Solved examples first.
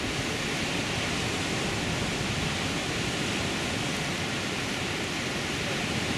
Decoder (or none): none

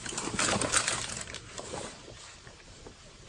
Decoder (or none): vocoder, BigVGAN v2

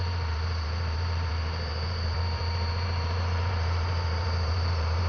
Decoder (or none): vocoder, BigVGAN v2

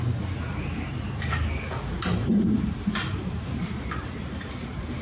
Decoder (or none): vocoder, BigVGAN v2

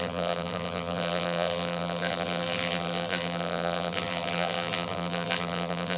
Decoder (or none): vocoder, BigVGAN v2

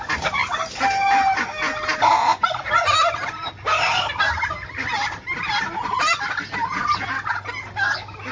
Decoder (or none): none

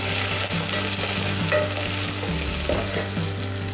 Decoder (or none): none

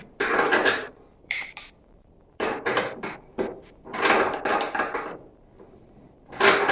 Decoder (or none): vocoder, BigVGAN v2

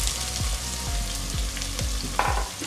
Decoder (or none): none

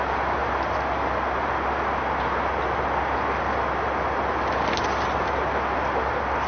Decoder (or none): none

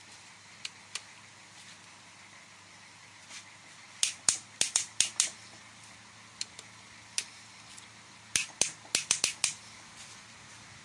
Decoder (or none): none